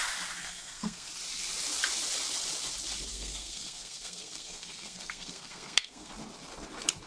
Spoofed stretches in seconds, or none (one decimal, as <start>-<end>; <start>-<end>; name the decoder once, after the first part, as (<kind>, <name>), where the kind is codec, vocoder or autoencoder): 0.4-1.1 (codec, SNAC); 3.1-6.1